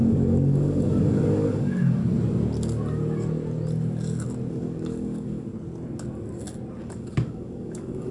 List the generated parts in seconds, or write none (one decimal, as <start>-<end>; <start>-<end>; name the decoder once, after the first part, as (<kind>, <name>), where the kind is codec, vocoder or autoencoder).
0.0-2.0 (codec, DAC); 4.5-5.5; 6.8-8.1